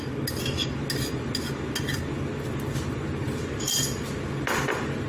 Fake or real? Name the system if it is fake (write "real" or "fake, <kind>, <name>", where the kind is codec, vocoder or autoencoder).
real